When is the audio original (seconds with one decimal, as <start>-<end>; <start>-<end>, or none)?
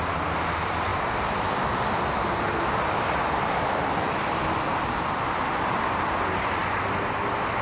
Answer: 0.0-0.9; 5.5-7.6